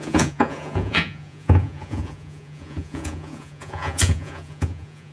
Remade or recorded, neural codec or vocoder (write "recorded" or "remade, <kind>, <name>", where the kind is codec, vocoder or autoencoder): remade, vocoder, Vocos